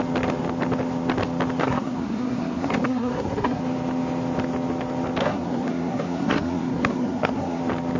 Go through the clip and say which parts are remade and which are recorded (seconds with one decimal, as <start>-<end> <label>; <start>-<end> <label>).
0.0-1.6 recorded; 1.6-3.6 remade; 3.6-5.2 recorded; 5.2-7.6 remade; 7.6-8.0 recorded